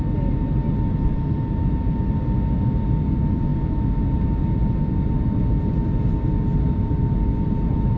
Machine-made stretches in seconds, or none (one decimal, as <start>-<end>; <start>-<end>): none